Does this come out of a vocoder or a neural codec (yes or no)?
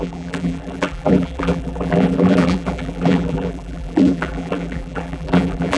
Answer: yes